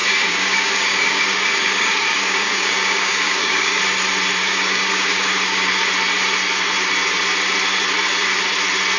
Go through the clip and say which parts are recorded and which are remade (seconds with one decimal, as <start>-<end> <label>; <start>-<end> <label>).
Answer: 0.0-3.8 remade; 3.8-4.4 recorded; 4.4-5.9 remade; 5.9-9.0 recorded